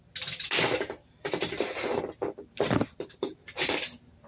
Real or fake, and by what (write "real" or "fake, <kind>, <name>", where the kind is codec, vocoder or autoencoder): real